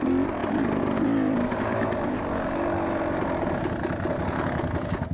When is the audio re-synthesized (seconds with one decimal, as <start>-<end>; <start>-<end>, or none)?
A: none